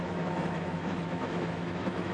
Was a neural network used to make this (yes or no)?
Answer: yes